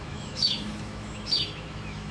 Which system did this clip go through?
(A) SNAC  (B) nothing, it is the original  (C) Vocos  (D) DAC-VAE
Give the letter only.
D